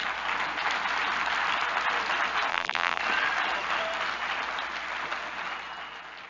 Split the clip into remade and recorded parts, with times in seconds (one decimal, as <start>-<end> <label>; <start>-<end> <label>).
0.0-2.5 recorded; 2.5-3.0 remade; 3.0-6.3 recorded